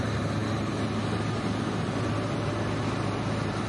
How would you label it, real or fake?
real